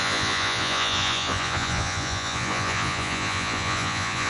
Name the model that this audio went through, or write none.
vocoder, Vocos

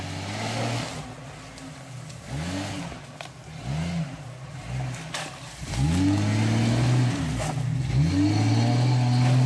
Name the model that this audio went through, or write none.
none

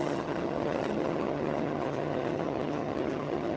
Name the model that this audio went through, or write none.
vocoder, HiFi-GAN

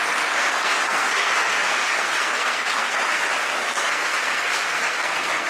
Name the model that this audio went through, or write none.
codec, SNAC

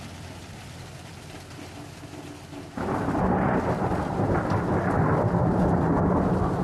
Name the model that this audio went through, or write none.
none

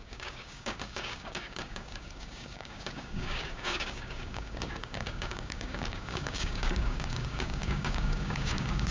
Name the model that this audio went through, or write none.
codec, DAC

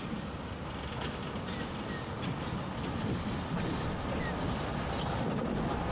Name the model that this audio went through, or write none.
none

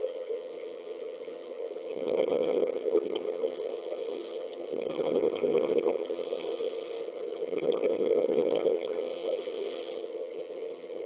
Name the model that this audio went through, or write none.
vocoder, HiFi-GAN